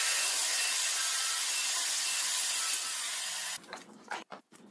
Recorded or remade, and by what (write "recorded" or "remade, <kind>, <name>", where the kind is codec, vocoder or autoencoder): remade, vocoder, Vocos